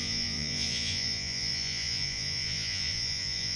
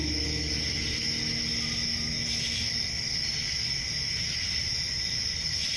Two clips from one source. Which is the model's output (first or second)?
first